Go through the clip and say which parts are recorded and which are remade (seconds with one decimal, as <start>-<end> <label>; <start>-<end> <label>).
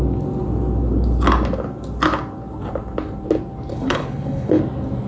0.0-3.7 recorded; 3.7-4.6 remade; 4.6-5.1 recorded